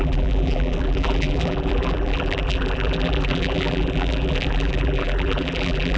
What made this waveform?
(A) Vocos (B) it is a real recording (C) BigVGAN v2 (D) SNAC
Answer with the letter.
C